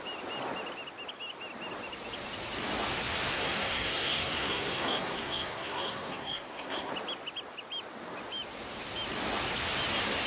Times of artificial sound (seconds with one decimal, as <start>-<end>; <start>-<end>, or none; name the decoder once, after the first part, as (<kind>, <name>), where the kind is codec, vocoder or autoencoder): 3.3-6.9 (codec, SNAC)